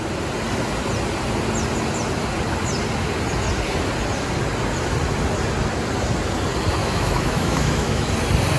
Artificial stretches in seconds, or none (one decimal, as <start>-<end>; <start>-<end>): 6.8-8.1